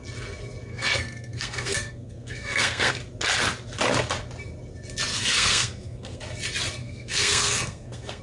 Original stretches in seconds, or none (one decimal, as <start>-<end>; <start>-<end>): 0.0-0.7; 2.9-5.1; 6.2-6.8